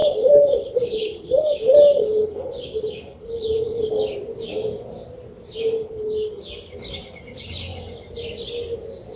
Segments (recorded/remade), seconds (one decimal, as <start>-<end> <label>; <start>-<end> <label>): 0.0-3.9 remade; 3.9-5.8 recorded; 5.8-6.4 remade; 6.4-9.2 recorded